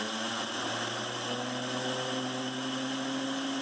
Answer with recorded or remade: recorded